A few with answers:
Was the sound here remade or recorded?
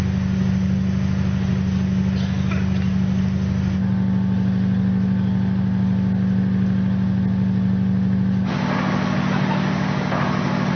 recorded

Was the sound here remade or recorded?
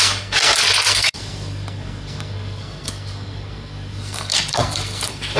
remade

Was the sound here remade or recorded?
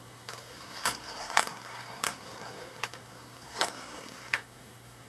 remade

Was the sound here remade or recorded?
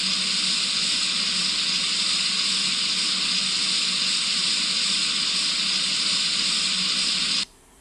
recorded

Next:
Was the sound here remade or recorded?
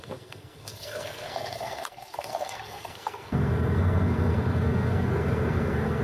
remade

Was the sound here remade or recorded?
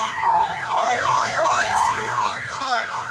remade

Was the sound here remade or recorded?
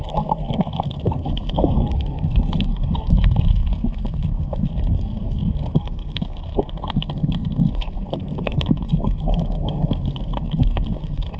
remade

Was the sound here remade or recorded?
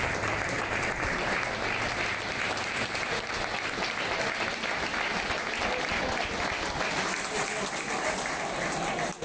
recorded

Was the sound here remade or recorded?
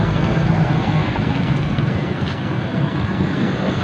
remade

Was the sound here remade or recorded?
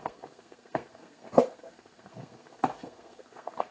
remade